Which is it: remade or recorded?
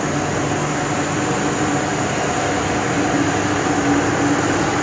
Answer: recorded